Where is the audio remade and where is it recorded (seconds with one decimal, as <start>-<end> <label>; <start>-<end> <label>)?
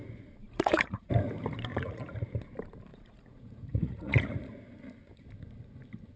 0.0-0.4 recorded; 0.4-1.1 remade; 1.1-1.7 recorded; 1.7-2.3 remade; 2.3-2.9 recorded; 2.9-4.5 remade; 4.5-6.2 recorded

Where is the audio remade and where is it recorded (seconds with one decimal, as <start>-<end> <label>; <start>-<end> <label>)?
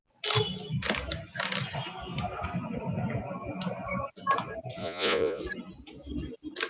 0.0-4.8 recorded; 4.8-5.4 remade; 5.4-6.7 recorded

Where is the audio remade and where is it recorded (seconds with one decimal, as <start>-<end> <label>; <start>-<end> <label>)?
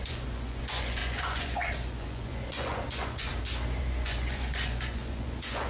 0.0-3.3 remade; 3.3-3.8 recorded; 3.8-5.7 remade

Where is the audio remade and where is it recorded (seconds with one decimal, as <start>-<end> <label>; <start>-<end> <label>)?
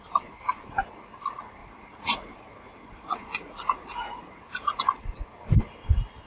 0.0-1.6 recorded; 1.6-4.8 remade; 4.8-6.3 recorded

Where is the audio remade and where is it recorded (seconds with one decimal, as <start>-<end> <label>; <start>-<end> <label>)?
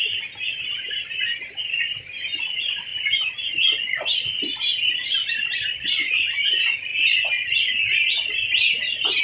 0.0-6.9 remade; 6.9-9.2 recorded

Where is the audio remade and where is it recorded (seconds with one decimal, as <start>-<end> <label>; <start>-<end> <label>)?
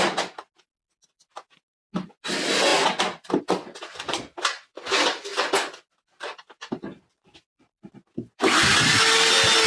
0.0-9.7 recorded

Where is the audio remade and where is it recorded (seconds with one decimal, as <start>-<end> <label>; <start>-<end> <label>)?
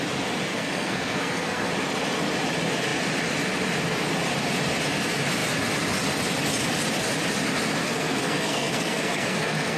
0.0-0.5 recorded; 0.5-1.7 remade; 1.7-7.8 recorded; 7.8-9.8 remade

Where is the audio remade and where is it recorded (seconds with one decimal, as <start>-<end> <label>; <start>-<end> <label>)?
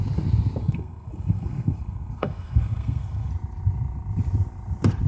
0.0-0.6 recorded; 0.6-3.3 remade; 3.3-5.1 recorded